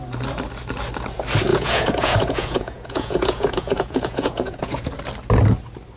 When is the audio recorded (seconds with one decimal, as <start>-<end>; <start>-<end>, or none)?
0.0-1.5; 4.9-6.0